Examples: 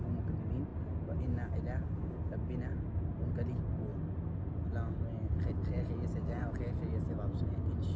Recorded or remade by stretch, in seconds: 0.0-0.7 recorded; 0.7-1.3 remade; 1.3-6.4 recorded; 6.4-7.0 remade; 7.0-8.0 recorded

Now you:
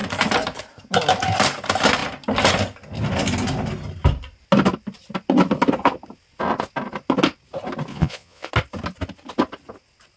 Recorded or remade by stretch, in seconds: 0.0-7.9 recorded; 7.9-8.5 remade; 8.5-10.2 recorded